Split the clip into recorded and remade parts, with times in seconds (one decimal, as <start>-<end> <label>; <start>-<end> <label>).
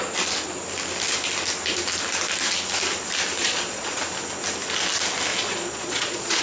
0.0-3.4 recorded; 3.4-4.0 remade; 4.0-5.3 recorded; 5.3-6.4 remade